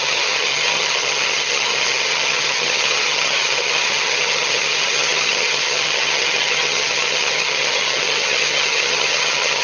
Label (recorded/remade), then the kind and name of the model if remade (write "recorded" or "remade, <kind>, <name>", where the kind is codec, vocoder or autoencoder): remade, vocoder, HiFi-GAN